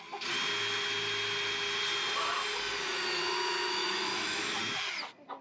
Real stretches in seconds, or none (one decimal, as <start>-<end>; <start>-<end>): 0.0-3.8; 4.6-5.4

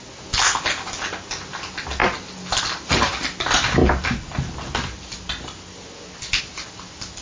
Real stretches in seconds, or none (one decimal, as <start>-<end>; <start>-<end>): 0.0-7.2

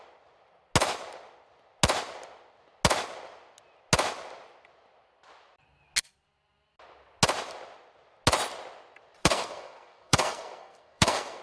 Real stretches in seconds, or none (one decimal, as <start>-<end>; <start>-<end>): 0.0-9.2

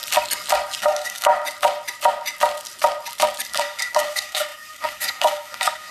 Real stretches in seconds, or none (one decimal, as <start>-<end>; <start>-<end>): 0.0-0.8; 1.3-3.5

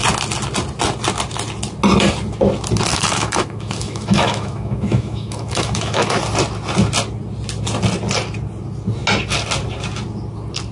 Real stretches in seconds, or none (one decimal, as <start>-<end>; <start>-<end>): 0.0-2.9; 6.2-10.7

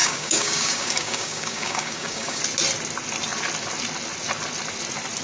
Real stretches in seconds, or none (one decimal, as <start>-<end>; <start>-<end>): 2.4-5.2

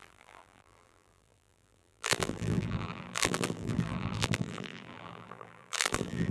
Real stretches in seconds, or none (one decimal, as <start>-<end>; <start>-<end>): none